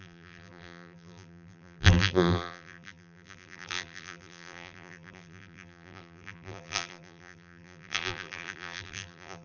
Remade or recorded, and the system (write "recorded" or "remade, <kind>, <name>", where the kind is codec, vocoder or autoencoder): remade, vocoder, BigVGAN v2